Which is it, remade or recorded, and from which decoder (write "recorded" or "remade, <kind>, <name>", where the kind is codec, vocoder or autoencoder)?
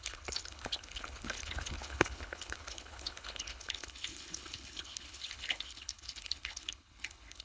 remade, codec, HILCodec